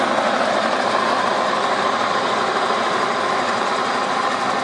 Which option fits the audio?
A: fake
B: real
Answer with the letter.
B